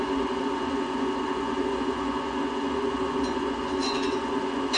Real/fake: fake